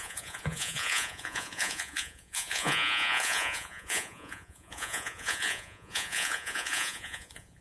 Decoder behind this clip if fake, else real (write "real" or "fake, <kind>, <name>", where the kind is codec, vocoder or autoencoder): fake, vocoder, Vocos